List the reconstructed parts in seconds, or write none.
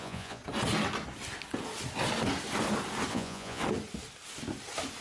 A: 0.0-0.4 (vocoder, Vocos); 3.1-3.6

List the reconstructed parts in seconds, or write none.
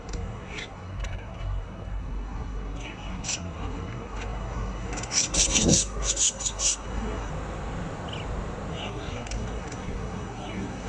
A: 0.0-7.3 (codec, SNAC); 8.7-10.9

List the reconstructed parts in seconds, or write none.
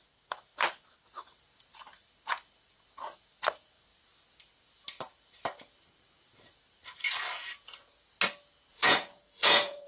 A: 8.7-9.9 (vocoder, Vocos)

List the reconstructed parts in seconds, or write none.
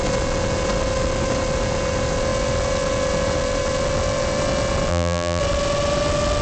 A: 4.9-5.4 (vocoder, BigVGAN v2)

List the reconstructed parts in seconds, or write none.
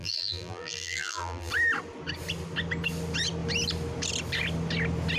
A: 0.0-1.5 (vocoder, BigVGAN v2)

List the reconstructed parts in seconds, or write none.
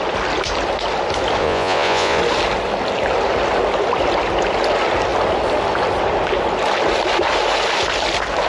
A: 1.4-2.2 (vocoder, Vocos)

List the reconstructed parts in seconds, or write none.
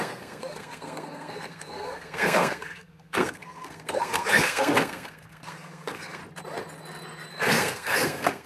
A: 0.0-6.2 (codec, SNAC); 7.3-8.5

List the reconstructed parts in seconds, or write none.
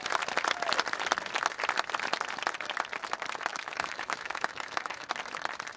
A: 3.5-5.1 (autoencoder, DAC-VAE)